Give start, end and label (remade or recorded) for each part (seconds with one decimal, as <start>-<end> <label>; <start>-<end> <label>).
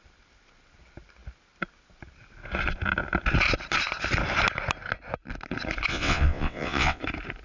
0.0-5.9 recorded; 5.9-7.0 remade; 7.0-7.4 recorded